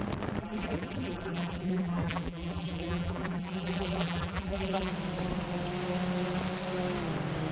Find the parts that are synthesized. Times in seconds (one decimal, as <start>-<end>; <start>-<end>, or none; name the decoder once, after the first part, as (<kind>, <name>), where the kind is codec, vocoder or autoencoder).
0.4-4.9 (vocoder, BigVGAN v2)